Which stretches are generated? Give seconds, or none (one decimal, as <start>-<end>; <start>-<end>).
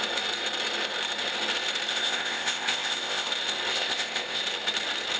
1.9-3.3; 3.7-4.4